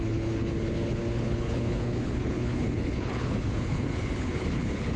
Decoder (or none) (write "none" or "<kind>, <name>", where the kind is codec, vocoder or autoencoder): codec, HILCodec